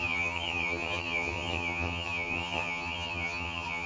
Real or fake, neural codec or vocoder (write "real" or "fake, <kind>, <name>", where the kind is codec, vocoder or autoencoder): fake, vocoder, HiFi-GAN